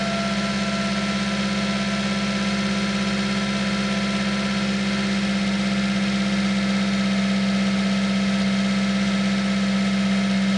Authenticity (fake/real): real